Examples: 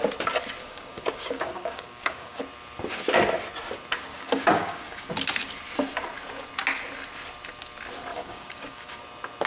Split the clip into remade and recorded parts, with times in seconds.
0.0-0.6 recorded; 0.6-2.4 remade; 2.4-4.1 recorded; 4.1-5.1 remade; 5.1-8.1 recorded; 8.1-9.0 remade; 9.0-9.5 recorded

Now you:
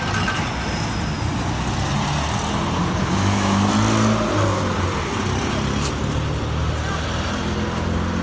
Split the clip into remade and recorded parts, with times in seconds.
0.0-3.0 recorded; 3.0-3.7 remade; 3.7-8.2 recorded

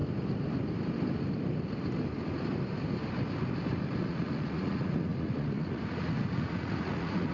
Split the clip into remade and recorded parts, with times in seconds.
0.0-4.0 recorded; 4.0-7.3 remade